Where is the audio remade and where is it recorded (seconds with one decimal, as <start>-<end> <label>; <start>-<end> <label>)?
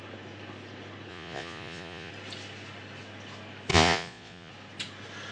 0.0-1.1 recorded; 1.1-2.1 remade; 2.1-3.7 recorded; 3.7-4.5 remade; 4.5-5.3 recorded